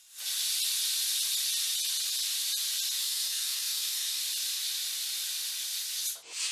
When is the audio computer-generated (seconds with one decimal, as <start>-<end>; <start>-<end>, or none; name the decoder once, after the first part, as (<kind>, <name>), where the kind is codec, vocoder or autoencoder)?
3.0-4.2 (codec, DAC)